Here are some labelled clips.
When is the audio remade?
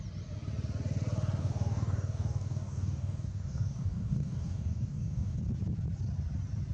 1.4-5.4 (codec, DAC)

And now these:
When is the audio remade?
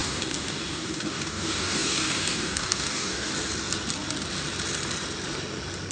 0.0-3.3 (codec, DAC)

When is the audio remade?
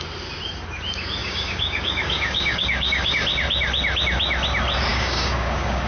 1.2-3.1 (codec, DAC); 4.9-5.9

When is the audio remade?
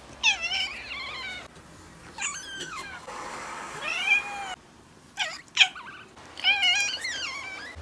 2.6-3.8 (codec, DAC)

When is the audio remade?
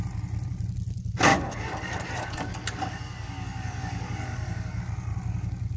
1.3-4.8 (codec, DAC)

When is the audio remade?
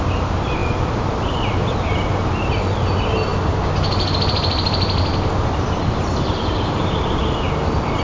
none